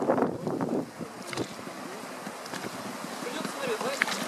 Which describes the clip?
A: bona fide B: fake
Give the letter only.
A